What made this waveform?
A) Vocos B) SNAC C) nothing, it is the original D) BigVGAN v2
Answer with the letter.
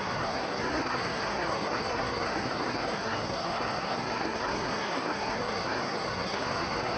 B